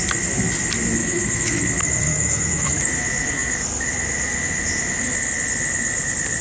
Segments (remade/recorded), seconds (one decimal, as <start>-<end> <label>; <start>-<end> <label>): 0.0-1.0 recorded; 1.0-1.6 remade; 1.6-2.1 recorded; 2.1-2.7 remade; 2.7-6.4 recorded